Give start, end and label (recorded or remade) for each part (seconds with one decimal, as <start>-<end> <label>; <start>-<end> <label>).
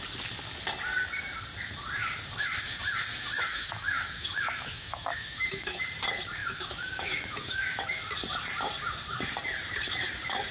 0.0-3.5 recorded; 3.5-5.8 remade; 5.8-6.4 recorded; 6.4-8.0 remade; 8.0-10.5 recorded